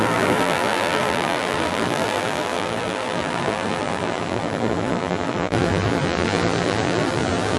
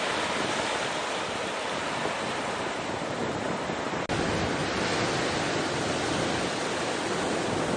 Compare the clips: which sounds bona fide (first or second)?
second